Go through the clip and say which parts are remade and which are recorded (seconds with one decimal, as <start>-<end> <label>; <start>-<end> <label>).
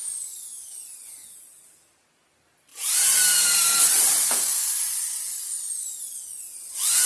0.0-2.7 recorded; 2.7-4.1 remade; 4.1-7.1 recorded